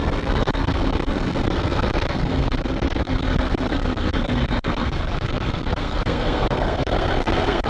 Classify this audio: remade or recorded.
remade